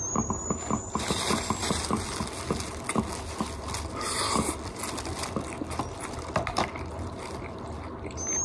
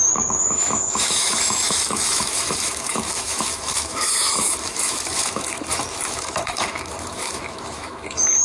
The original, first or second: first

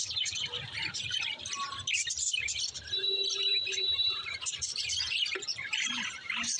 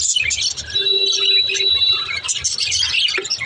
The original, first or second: second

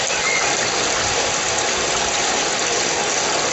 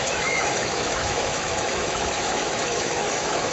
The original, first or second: first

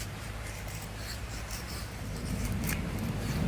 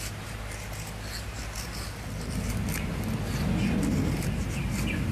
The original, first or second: second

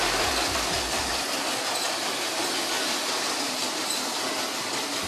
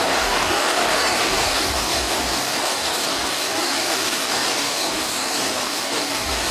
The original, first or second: first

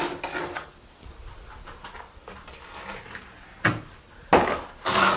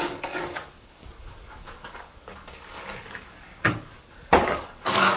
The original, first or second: first